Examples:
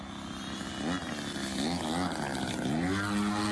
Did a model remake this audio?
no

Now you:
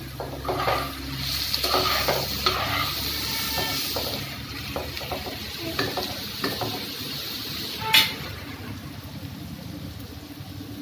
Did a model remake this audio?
no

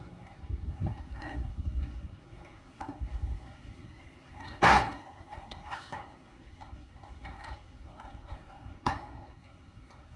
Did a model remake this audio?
yes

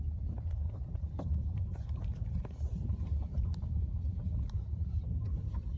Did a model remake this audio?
yes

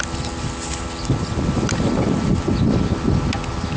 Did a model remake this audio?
no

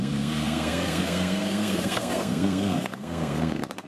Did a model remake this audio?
yes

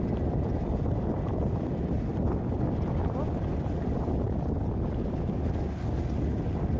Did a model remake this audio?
no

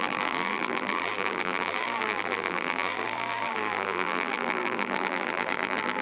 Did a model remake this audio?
yes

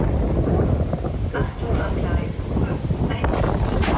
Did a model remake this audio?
no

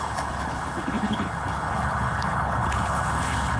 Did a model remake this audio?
yes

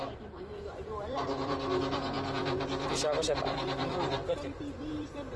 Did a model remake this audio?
yes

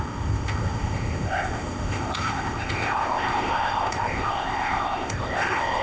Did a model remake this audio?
yes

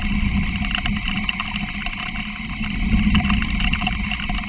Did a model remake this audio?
no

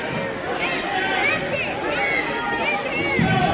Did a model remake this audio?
no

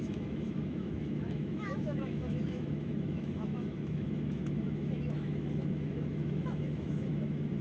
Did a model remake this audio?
yes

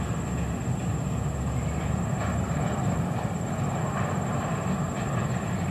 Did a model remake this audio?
no